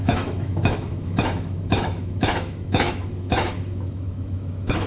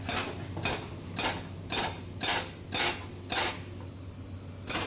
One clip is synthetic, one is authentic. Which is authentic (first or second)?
second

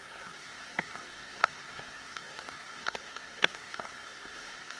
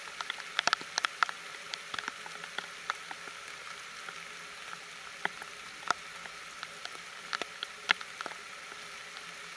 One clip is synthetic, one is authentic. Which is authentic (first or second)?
second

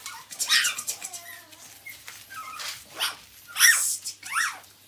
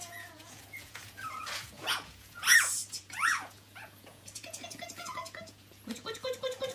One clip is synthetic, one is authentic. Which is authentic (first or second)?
first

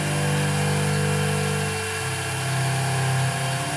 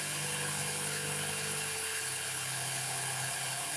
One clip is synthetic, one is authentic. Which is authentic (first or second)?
first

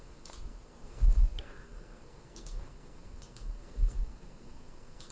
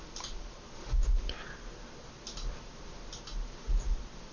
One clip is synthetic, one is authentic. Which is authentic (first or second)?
second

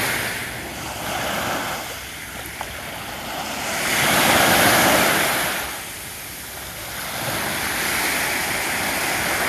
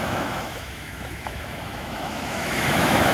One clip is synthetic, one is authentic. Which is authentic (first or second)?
first